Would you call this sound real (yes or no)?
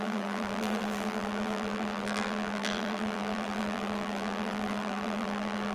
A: no